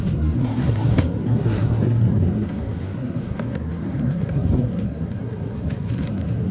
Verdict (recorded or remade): remade